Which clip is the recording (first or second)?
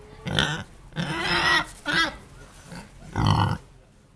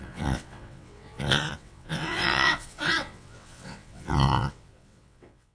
first